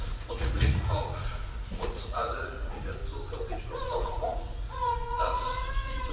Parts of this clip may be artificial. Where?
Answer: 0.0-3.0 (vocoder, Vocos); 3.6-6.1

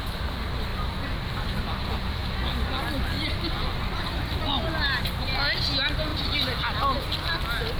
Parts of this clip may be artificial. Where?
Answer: none

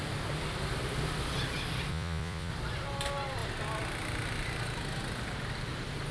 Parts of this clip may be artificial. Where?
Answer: 1.9-2.5 (vocoder, Vocos)

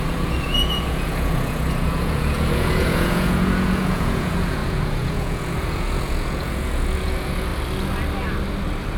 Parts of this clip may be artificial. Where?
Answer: 0.0-7.5 (vocoder, Vocos)

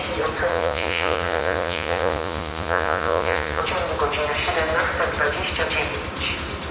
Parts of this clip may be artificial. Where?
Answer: 0.5-3.6 (vocoder, Vocos)

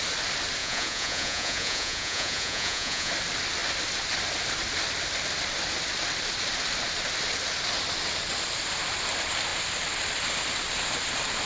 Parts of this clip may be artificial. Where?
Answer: 0.6-3.1 (vocoder, Vocos)

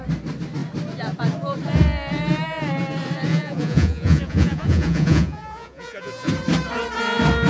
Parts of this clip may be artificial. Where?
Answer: 3.3-6.3 (vocoder, Vocos)

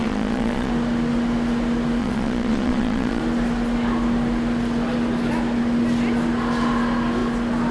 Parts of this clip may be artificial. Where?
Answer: 0.0-0.7 (vocoder, Vocos); 2.0-3.2